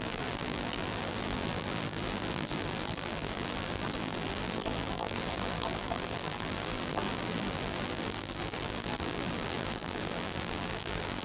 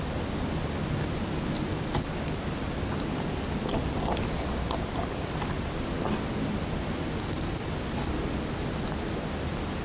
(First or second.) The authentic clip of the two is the second